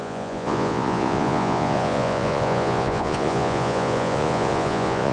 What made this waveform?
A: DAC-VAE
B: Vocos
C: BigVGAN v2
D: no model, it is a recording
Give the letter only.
B